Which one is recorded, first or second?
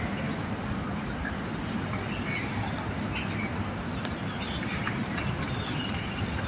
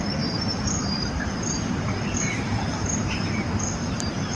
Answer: first